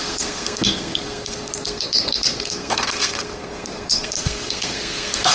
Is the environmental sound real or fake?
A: fake